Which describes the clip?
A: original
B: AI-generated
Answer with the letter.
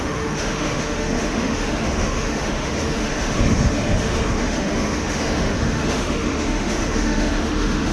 B